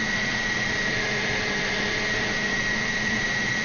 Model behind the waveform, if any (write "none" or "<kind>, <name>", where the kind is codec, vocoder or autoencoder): vocoder, Vocos